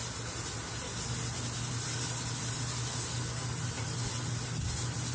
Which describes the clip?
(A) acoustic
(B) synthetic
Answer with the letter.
A